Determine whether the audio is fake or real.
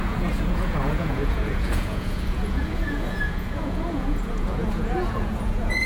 fake